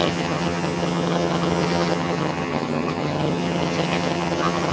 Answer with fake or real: fake